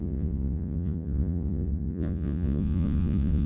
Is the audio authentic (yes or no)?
no